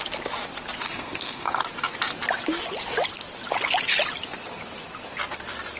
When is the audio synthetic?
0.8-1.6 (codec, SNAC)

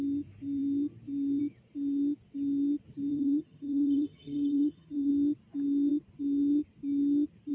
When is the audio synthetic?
3.1-5.1 (vocoder, HiFi-GAN)

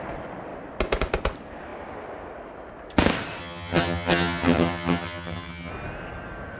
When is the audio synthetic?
3.4-5.7 (vocoder, HiFi-GAN)

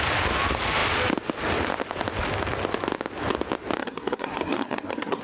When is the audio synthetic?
3.8-5.2 (codec, SNAC)

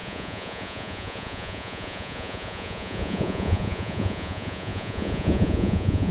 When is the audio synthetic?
0.0-6.1 (vocoder, Vocos)

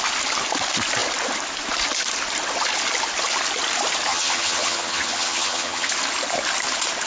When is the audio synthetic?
4.1-5.9 (vocoder, HiFi-GAN)

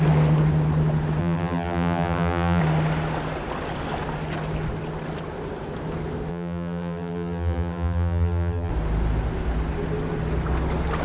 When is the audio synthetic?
1.2-2.6 (vocoder, BigVGAN v2); 6.3-8.7